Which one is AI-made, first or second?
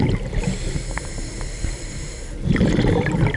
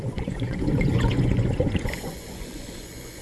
second